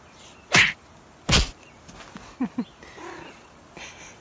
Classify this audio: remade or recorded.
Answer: recorded